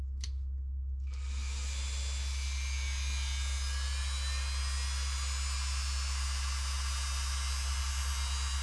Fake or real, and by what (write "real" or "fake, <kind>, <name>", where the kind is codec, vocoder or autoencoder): real